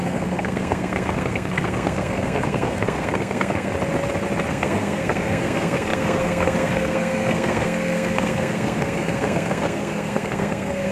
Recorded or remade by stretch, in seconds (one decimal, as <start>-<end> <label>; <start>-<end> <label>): 0.0-3.7 remade; 3.7-4.5 recorded; 4.5-10.9 remade